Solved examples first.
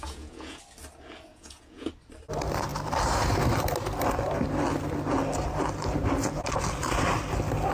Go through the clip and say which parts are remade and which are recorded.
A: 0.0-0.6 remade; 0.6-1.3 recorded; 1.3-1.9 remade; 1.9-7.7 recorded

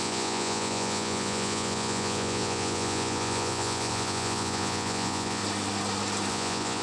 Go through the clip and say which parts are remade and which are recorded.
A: 0.0-5.4 remade; 5.4-6.3 recorded; 6.3-6.8 remade

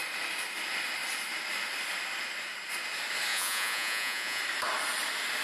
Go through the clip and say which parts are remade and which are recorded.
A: 0.0-3.3 recorded; 3.3-4.4 remade; 4.4-5.4 recorded

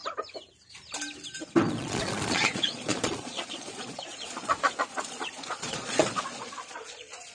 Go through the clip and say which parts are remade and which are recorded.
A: 0.0-1.4 recorded; 1.4-7.3 remade

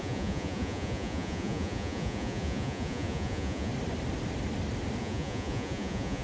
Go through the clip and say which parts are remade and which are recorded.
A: 0.0-3.7 remade; 3.7-5.0 recorded; 5.0-6.2 remade

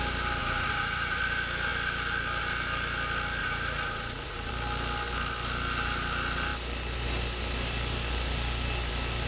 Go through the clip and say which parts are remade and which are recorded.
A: 0.0-0.4 recorded; 0.4-1.2 remade; 1.2-3.4 recorded; 3.4-4.5 remade; 4.5-9.3 recorded

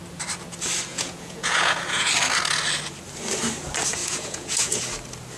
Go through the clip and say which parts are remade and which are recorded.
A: 0.0-0.9 recorded; 0.9-2.1 remade; 2.1-4.0 recorded; 4.0-4.8 remade; 4.8-5.4 recorded

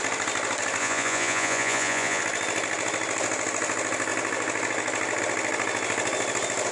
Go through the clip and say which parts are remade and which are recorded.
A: 0.0-0.8 recorded; 0.8-2.2 remade; 2.2-6.7 recorded